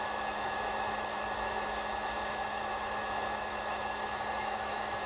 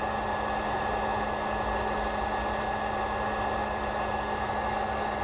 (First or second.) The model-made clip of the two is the first